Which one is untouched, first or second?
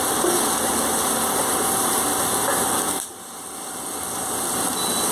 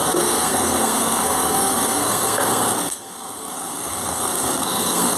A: first